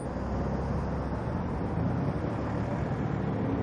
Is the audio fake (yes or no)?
no